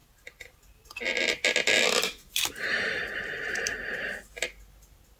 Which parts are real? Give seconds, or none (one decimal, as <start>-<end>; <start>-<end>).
0.0-5.2